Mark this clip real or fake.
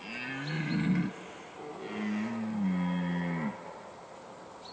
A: real